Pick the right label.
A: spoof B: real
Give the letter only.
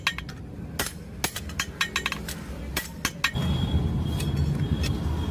B